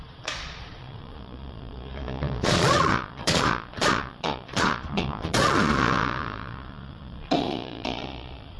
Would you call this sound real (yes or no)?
no